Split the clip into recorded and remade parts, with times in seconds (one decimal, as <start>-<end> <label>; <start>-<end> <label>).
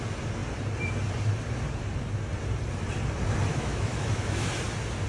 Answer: 0.0-3.5 recorded; 3.5-4.5 remade; 4.5-5.1 recorded